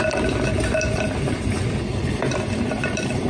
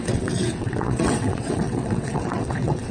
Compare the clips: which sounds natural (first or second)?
first